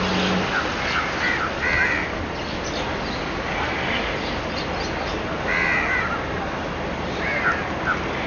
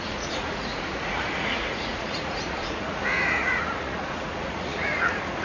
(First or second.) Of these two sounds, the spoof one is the second